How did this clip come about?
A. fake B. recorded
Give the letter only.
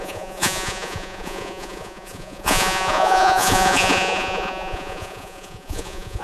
A